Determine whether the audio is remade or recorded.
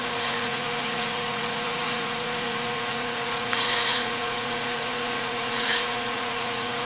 remade